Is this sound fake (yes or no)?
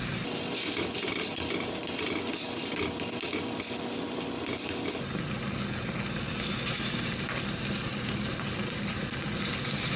no